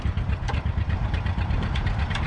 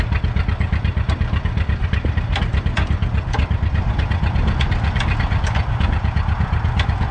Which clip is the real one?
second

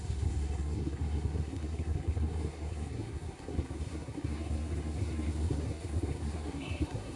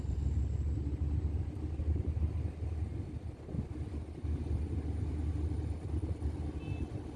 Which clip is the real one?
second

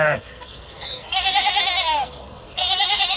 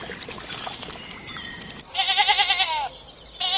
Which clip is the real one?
second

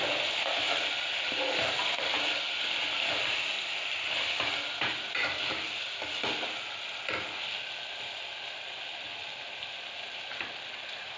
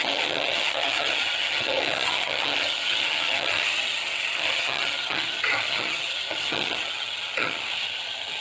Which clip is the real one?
first